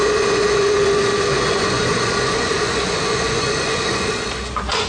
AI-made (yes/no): yes